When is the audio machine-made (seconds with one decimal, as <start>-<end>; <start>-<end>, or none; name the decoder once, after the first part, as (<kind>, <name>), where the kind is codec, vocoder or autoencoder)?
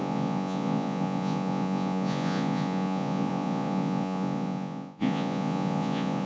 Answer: 0.0-6.3 (vocoder, Vocos)